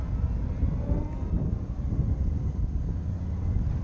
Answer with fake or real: real